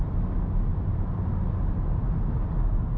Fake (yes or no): no